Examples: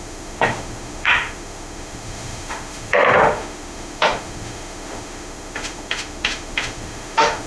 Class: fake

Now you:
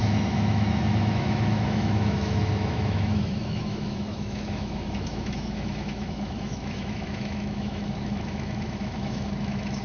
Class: fake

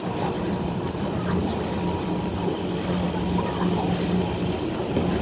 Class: real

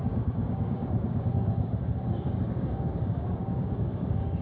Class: fake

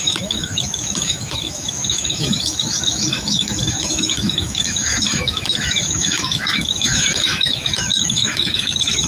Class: fake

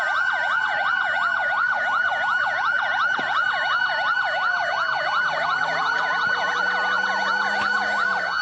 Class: real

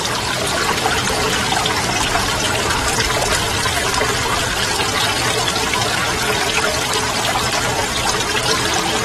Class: real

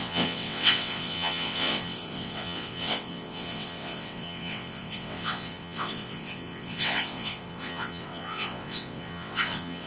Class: fake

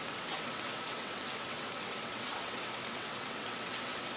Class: fake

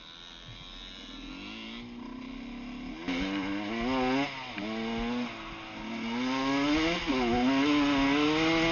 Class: real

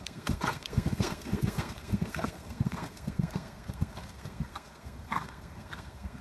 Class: fake